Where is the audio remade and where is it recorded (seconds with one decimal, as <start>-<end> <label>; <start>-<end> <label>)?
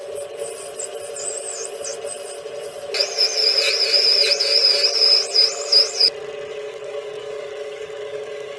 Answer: 0.0-6.5 recorded; 6.5-8.6 remade